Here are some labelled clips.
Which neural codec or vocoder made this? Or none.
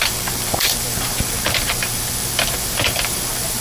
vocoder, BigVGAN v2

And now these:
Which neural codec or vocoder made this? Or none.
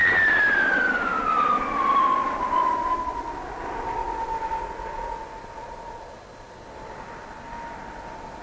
none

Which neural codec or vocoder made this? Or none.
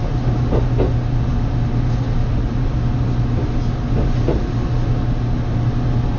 none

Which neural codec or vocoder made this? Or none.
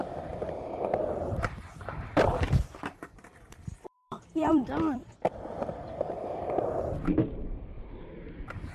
vocoder, BigVGAN v2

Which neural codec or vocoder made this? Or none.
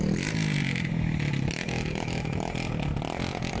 none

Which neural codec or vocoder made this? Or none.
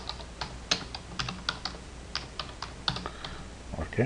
none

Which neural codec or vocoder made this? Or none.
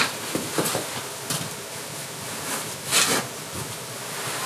none